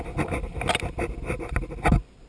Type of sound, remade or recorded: recorded